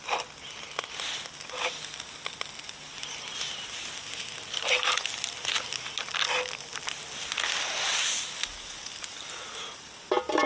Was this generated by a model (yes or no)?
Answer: no